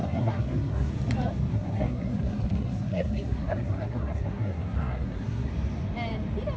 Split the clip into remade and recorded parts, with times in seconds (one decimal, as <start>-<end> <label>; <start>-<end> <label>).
0.0-0.9 remade; 0.9-1.5 recorded; 1.5-5.5 remade; 5.5-6.6 recorded